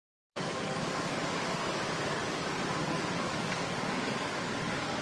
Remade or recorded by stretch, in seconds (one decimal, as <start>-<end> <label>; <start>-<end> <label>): 0.0-2.2 remade; 2.2-2.8 recorded; 2.8-5.0 remade